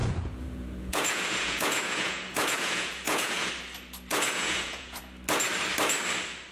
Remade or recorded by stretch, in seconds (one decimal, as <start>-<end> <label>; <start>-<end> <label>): 0.0-3.5 remade; 3.5-4.1 recorded; 4.1-5.0 remade; 5.0-6.5 recorded